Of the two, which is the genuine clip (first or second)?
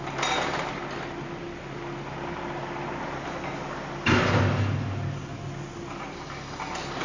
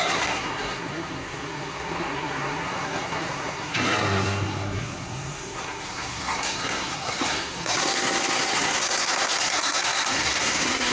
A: first